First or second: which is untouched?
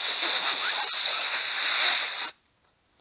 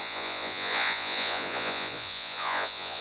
first